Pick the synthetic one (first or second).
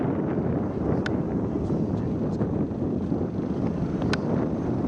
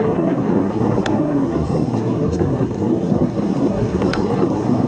second